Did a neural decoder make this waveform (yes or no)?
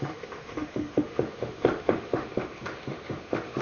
yes